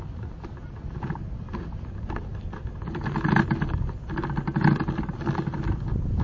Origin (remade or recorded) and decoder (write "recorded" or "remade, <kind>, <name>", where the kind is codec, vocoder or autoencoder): recorded